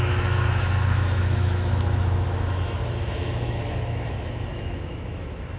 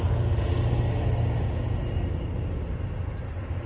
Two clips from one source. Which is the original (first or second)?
second